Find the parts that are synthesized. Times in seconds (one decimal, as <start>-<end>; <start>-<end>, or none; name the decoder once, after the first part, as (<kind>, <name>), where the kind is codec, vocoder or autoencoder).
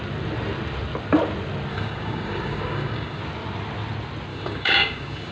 1.7-3.2 (codec, DAC); 4.3-5.3